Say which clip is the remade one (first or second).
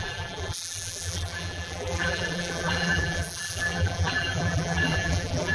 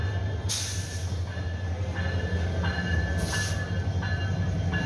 first